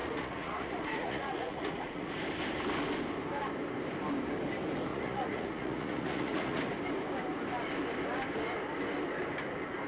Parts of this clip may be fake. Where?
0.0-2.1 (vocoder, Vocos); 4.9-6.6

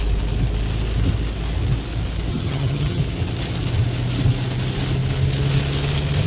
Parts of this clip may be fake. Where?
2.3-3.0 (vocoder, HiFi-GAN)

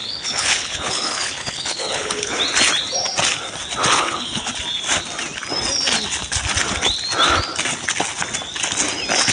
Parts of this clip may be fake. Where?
0.0-2.4 (codec, HILCodec); 3.9-4.5

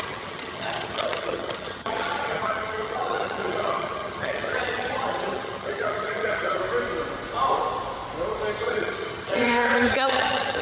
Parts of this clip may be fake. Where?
0.0-6.6 (vocoder, HiFi-GAN); 8.6-10.6

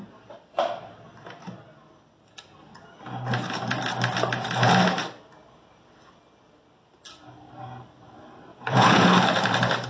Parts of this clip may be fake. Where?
8.5-9.1 (vocoder, Vocos)

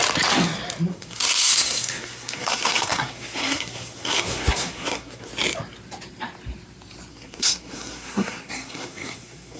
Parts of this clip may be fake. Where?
0.9-5.3 (codec, SNAC); 7.1-9.6